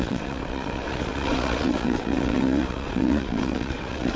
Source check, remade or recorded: remade